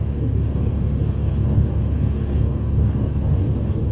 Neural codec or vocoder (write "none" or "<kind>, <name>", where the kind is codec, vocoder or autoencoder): codec, DAC